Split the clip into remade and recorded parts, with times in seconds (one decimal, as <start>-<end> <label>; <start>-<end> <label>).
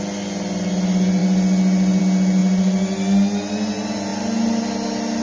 0.0-5.2 recorded